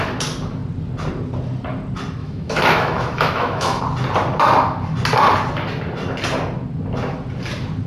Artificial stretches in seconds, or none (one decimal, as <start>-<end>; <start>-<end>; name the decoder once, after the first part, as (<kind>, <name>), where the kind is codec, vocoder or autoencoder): 2.2-3.8 (autoencoder, DAC-VAE)